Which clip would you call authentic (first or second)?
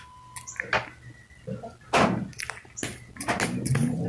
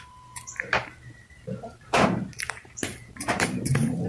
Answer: first